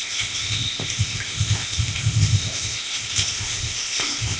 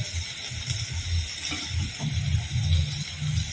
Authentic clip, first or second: second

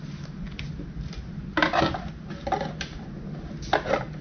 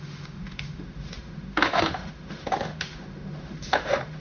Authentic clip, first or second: first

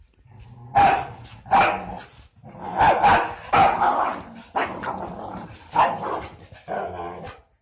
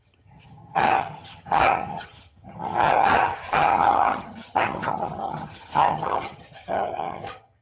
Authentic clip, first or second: first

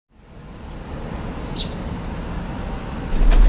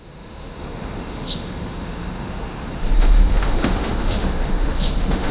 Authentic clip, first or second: first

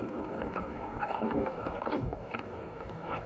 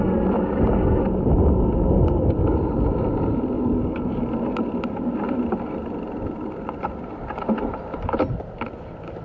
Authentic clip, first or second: second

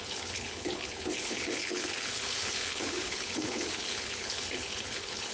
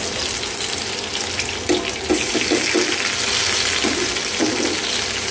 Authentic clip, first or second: second